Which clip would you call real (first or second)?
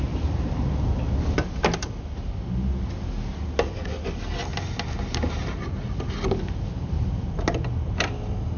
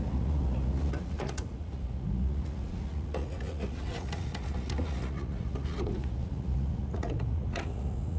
first